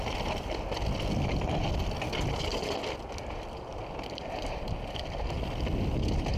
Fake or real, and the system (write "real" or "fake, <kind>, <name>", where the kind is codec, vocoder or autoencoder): real